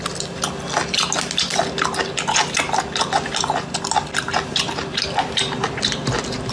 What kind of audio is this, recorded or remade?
recorded